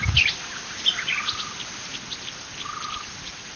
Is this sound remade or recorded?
recorded